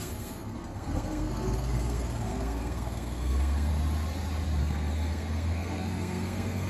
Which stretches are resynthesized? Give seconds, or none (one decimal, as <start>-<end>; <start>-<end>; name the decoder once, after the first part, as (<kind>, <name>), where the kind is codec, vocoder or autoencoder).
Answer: 0.0-3.7 (codec, SNAC); 4.6-6.7